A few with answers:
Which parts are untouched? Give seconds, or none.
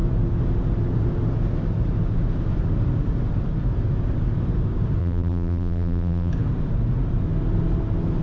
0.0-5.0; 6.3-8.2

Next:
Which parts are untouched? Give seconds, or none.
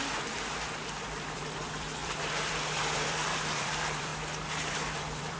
4.1-4.7